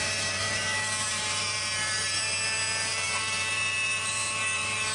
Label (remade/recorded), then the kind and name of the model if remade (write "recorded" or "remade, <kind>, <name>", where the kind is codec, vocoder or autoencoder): remade, vocoder, BigVGAN v2